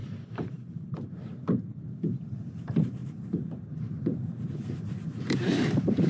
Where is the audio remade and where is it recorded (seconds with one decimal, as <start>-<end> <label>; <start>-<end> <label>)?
0.0-1.2 remade; 1.2-3.0 recorded; 3.0-6.1 remade